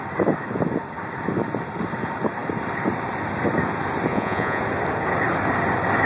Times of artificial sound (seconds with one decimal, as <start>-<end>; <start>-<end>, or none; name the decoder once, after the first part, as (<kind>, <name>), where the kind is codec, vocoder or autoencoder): 4.1-4.6 (vocoder, Vocos)